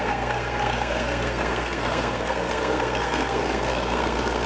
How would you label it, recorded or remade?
remade